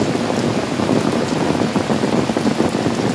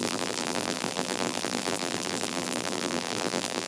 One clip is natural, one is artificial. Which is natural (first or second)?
first